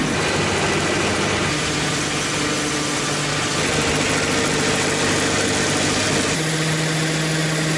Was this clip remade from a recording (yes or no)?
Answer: no